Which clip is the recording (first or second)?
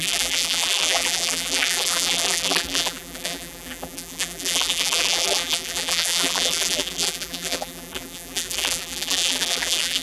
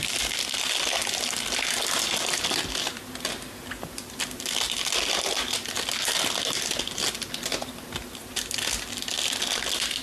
second